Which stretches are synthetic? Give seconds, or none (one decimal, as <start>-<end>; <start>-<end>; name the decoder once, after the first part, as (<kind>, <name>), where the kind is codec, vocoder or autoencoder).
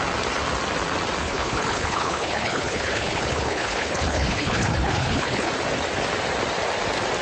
1.2-5.5 (codec, HILCodec)